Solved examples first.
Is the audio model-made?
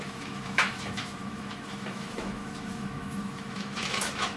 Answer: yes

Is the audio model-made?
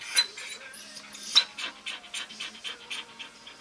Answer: no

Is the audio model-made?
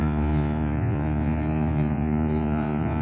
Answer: yes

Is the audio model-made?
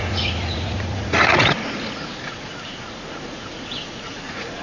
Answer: yes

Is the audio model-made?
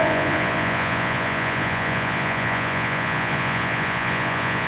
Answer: yes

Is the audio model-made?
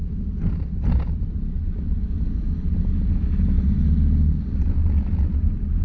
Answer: no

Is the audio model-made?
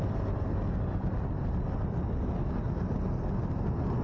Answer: no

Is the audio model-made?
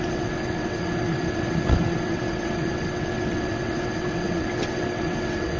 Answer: yes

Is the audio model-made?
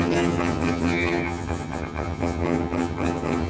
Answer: yes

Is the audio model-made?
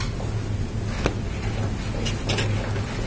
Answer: no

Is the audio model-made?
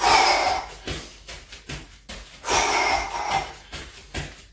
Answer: no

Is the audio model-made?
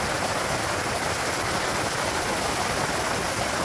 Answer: no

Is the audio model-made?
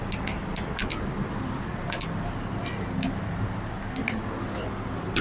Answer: no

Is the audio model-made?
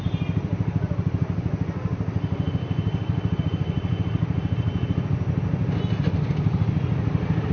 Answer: no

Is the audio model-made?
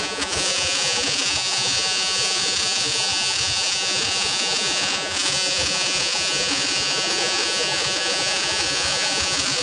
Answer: yes